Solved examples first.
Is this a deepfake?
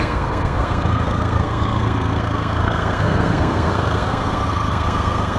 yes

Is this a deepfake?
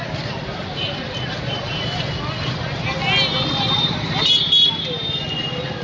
no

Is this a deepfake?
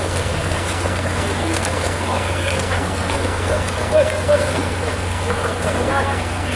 yes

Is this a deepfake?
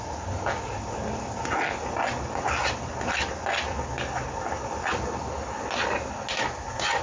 no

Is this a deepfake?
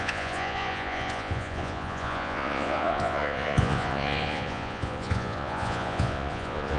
yes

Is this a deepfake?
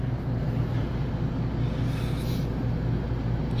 no